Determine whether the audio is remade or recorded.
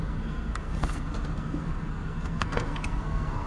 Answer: remade